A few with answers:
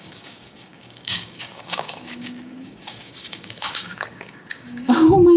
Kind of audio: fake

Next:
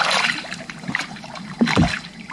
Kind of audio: fake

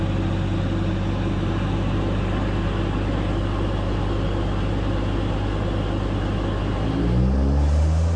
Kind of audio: real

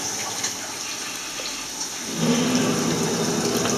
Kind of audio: real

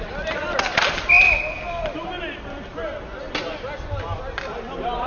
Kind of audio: real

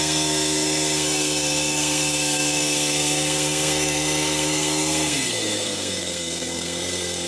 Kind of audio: fake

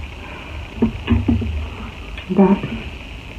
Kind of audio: real